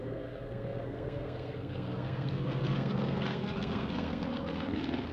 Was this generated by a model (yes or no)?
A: yes